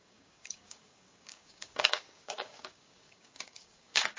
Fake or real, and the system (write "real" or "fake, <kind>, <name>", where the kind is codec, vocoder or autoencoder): fake, codec, DAC